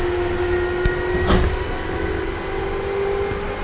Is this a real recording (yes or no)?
yes